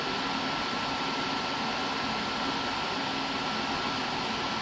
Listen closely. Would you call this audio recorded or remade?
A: recorded